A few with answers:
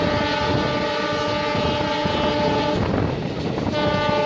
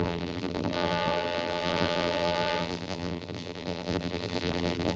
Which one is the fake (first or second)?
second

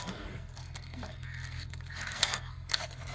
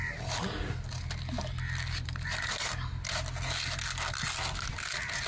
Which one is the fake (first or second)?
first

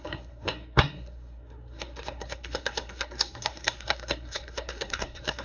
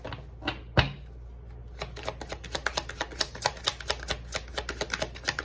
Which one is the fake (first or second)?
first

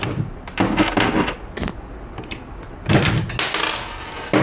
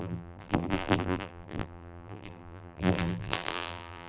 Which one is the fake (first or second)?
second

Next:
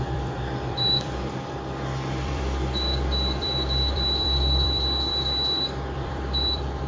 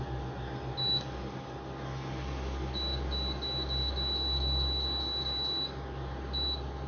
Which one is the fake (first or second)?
first